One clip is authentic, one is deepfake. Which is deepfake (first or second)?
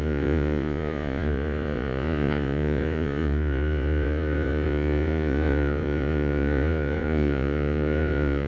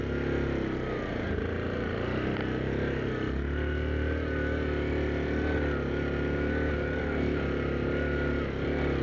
first